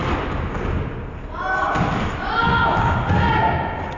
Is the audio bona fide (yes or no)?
yes